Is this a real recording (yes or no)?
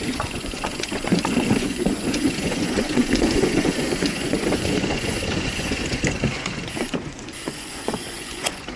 no